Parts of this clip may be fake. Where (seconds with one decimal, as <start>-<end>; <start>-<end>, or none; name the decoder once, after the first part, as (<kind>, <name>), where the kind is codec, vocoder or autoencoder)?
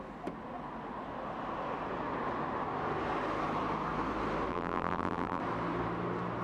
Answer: 4.5-5.4 (vocoder, BigVGAN v2)